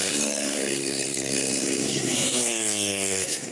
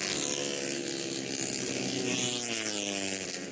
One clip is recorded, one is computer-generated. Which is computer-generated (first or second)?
first